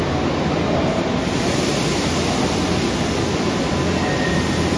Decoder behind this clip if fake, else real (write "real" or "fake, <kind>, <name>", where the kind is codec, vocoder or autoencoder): real